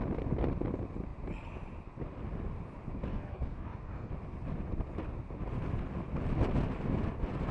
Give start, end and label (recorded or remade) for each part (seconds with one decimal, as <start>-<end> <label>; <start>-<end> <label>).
0.0-3.1 recorded; 3.1-4.1 remade; 4.1-7.5 recorded